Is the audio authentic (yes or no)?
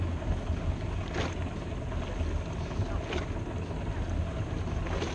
yes